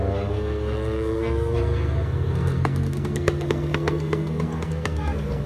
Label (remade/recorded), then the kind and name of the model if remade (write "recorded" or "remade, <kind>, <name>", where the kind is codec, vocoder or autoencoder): remade, codec, SNAC